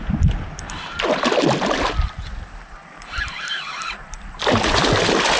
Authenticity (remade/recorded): recorded